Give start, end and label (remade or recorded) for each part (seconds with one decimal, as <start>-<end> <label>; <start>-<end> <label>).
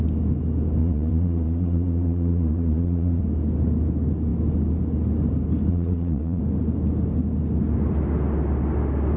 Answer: 0.0-0.8 recorded; 0.8-3.2 remade; 3.2-5.7 recorded; 5.7-6.4 remade; 6.4-9.2 recorded